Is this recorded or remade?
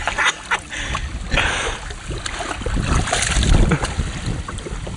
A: recorded